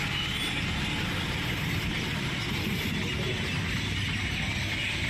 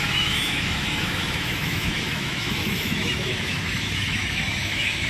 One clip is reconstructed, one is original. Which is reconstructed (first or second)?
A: second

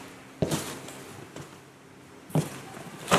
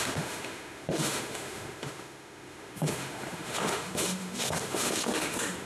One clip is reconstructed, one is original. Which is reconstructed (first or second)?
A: second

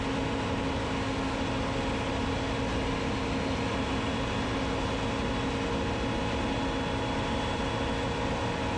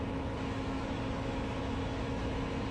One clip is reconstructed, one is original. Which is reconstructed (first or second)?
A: second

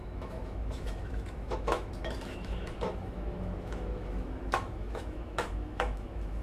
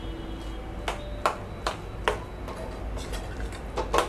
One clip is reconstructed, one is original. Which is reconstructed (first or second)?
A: first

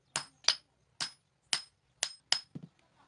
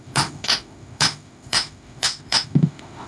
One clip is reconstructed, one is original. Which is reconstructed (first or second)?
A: second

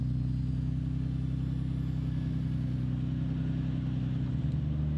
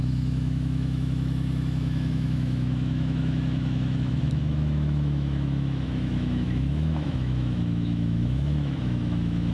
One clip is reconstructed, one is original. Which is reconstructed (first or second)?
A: second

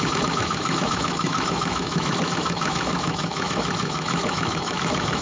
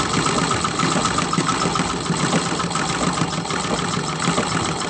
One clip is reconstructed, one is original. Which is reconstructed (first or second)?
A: first